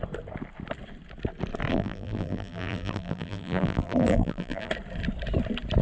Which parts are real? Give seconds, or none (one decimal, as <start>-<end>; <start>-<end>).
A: 0.0-1.7; 4.7-5.8